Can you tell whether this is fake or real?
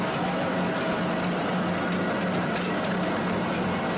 real